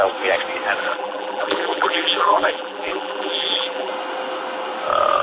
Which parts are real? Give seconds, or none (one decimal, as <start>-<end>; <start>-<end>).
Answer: 0.0-0.8; 3.9-5.2